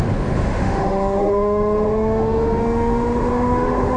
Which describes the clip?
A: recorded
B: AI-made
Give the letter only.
B